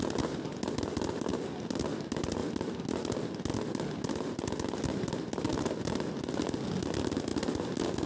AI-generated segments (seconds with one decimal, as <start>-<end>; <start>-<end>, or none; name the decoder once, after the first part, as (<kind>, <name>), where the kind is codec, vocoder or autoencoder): none